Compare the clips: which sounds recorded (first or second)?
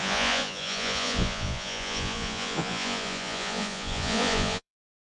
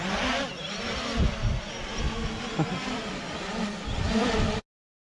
second